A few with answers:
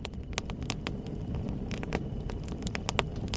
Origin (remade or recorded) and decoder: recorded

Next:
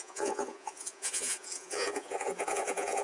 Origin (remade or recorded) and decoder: remade, vocoder, Vocos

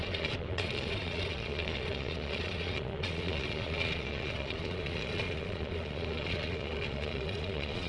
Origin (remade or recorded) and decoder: remade, vocoder, Vocos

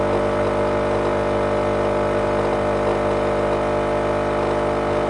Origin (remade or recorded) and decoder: recorded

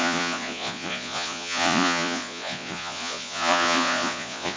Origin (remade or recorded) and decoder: remade, vocoder, Vocos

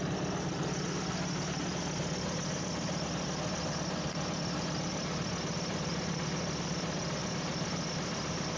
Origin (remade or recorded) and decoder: recorded